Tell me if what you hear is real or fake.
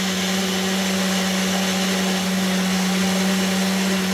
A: real